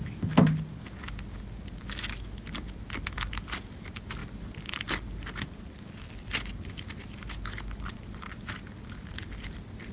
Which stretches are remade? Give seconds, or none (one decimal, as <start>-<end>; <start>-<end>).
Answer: none

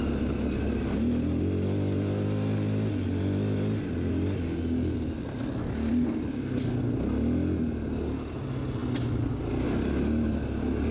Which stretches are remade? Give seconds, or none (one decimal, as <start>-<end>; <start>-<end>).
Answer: none

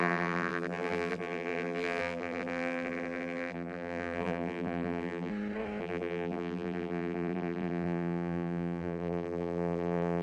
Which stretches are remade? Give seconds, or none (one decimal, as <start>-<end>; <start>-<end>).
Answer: 0.0-5.3; 5.8-10.2

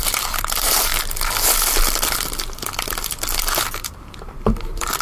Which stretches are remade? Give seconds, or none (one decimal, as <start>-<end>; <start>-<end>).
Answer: 0.0-0.9; 3.9-5.0